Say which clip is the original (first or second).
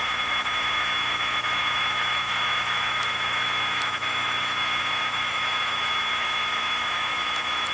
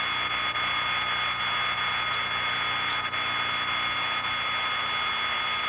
second